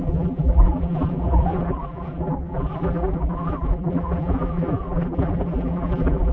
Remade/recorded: remade